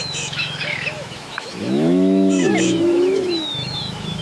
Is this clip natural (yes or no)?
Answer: no